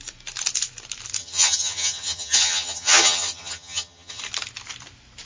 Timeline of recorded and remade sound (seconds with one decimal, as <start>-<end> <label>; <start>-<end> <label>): 0.0-1.2 recorded; 1.2-4.2 remade; 4.2-5.3 recorded